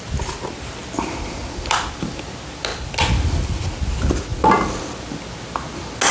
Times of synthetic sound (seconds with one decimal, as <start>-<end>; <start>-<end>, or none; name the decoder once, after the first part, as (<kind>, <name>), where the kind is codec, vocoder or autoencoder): none